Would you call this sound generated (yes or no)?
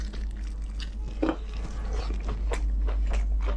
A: no